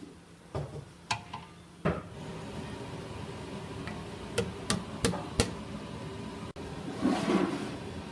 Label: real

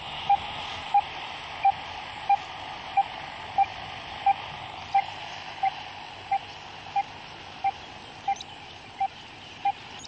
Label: real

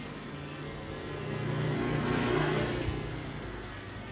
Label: fake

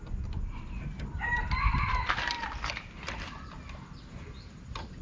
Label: real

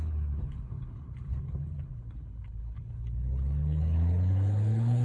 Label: fake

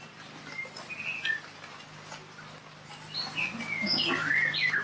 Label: real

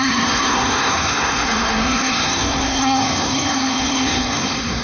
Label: fake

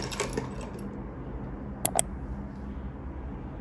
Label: real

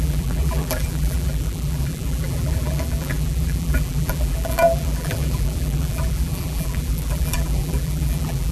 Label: fake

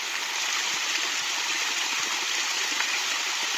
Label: real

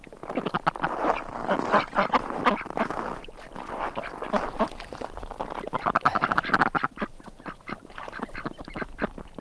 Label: real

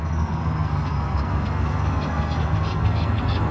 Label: fake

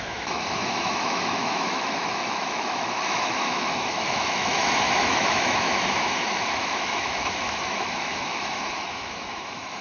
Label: fake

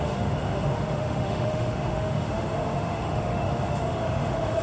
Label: fake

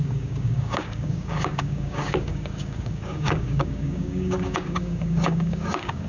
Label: fake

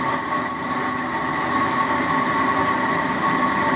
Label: real